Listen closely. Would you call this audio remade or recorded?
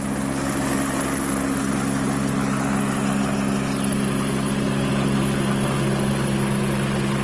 recorded